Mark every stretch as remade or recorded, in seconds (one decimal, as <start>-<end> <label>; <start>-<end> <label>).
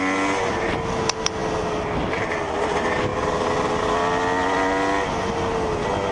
0.0-6.1 recorded